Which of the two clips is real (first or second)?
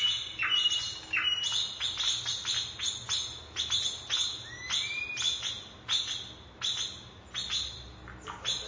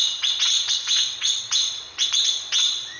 first